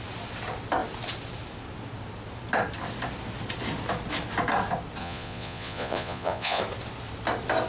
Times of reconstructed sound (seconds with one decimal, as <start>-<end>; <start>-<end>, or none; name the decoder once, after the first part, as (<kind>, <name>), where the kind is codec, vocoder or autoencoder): 5.0-6.6 (vocoder, Vocos)